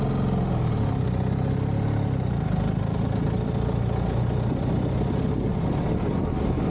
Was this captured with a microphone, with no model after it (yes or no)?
yes